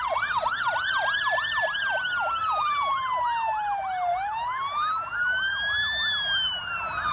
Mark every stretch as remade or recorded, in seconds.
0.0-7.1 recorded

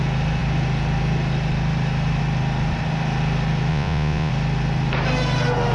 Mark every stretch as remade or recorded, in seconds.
0.0-3.7 recorded; 3.7-4.3 remade; 4.3-5.7 recorded

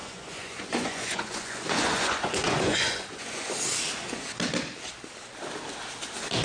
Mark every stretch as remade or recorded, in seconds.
0.0-3.5 remade; 3.5-6.4 recorded

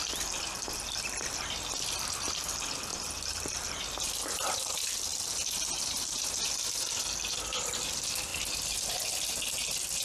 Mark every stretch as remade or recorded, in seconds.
0.0-10.0 recorded